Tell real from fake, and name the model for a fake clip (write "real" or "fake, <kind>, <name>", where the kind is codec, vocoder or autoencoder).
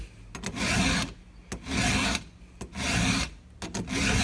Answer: real